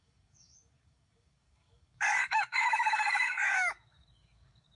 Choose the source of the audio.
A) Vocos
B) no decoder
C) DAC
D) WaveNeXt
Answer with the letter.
C